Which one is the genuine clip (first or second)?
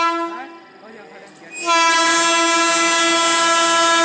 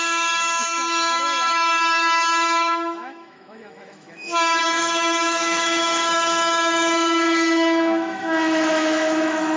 first